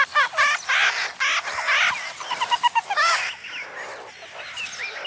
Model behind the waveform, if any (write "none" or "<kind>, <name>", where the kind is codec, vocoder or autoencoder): none